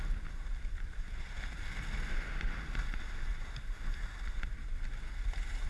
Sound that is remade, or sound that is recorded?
recorded